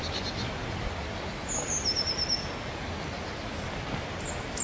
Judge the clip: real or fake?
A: real